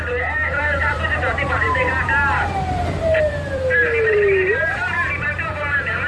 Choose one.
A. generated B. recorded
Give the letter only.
A